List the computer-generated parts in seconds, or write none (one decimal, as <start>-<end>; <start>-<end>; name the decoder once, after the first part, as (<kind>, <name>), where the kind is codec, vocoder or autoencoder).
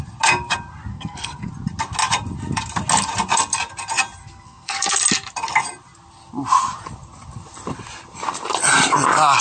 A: 0.9-1.5 (codec, SNAC); 4.2-5.0